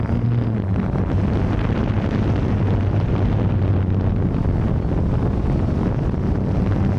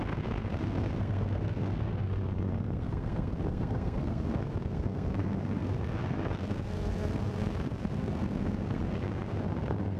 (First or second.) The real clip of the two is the first